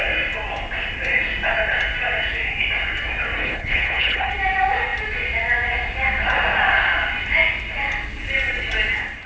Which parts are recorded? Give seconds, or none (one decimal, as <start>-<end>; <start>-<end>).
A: 0.0-3.4; 4.3-9.3